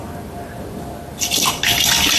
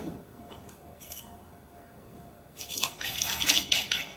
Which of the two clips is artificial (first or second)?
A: second